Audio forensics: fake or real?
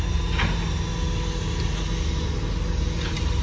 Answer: real